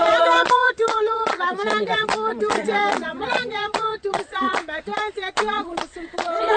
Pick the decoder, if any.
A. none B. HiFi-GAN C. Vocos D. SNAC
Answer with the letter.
C